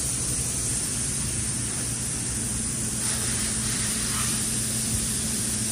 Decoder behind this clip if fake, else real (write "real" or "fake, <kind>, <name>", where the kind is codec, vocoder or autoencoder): fake, vocoder, BigVGAN v2